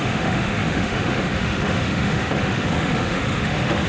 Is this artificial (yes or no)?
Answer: yes